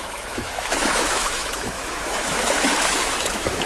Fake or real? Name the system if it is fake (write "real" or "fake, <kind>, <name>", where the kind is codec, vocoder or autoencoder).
fake, autoencoder, DAC-VAE